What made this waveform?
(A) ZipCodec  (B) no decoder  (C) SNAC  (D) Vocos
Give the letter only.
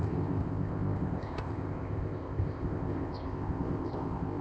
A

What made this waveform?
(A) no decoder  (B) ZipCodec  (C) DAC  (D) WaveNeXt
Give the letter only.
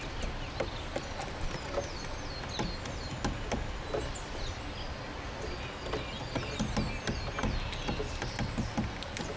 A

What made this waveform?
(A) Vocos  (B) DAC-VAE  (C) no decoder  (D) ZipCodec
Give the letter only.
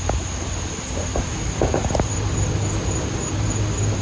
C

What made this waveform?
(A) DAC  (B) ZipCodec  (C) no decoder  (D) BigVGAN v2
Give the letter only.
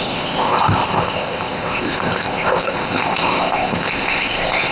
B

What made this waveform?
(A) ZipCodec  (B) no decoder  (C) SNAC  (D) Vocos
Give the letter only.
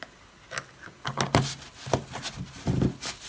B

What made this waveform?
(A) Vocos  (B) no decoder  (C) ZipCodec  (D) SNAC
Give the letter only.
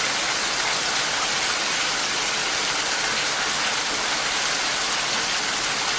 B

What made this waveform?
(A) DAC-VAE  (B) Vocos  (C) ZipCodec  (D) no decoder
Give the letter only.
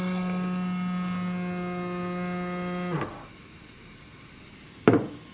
D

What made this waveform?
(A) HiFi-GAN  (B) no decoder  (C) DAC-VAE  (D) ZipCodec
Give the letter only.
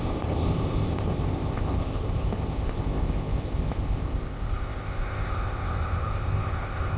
D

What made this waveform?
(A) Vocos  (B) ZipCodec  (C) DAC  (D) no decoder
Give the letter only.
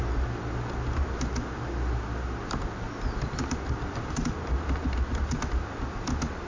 D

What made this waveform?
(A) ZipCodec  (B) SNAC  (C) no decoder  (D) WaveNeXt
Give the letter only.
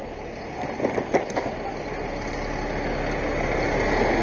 C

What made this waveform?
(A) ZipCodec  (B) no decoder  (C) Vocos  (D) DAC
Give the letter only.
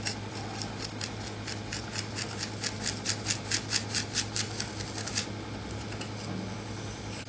B